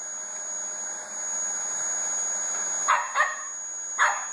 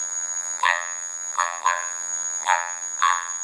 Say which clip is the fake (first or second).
second